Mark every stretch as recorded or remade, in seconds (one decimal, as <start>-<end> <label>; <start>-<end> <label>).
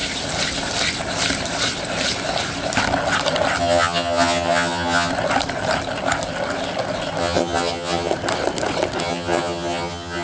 0.0-3.6 recorded; 3.6-5.1 remade; 5.1-7.2 recorded; 7.2-8.1 remade; 8.1-9.0 recorded; 9.0-10.2 remade